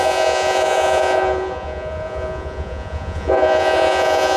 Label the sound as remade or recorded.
remade